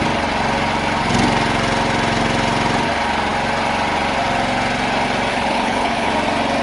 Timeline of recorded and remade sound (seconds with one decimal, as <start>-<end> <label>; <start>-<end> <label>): 0.0-5.3 recorded; 5.3-6.1 remade; 6.1-6.6 recorded